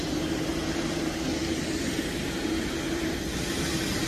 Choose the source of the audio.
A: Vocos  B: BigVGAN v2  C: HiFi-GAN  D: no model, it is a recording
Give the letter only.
D